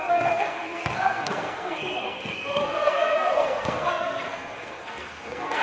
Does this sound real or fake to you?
fake